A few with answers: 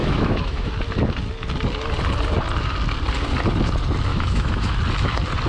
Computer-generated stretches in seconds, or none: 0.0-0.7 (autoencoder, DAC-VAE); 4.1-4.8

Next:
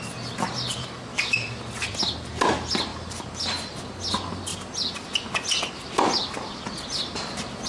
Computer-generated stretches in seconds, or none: 1.1-1.6 (autoencoder, DAC-VAE)

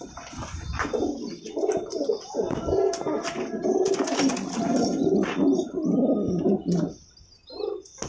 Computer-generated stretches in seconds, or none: none

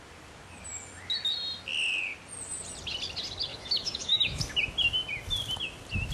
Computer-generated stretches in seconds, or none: 3.5-4.4 (autoencoder, DAC-VAE)